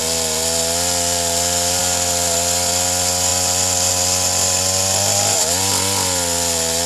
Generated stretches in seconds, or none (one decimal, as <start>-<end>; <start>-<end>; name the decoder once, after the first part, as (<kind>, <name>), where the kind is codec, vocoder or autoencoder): none